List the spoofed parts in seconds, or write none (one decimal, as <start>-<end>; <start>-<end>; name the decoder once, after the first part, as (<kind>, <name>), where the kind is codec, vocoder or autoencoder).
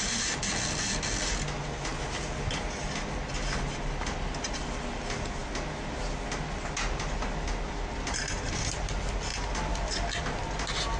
none